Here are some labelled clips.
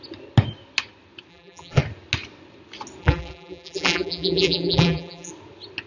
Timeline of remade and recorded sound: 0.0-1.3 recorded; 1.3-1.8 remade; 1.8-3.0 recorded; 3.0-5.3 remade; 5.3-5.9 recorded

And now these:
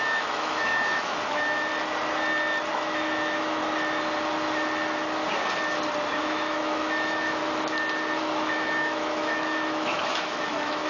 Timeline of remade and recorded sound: 0.0-1.7 remade; 1.7-2.7 recorded; 2.7-3.6 remade; 3.6-6.2 recorded; 6.2-7.4 remade; 7.4-8.2 recorded; 8.2-10.9 remade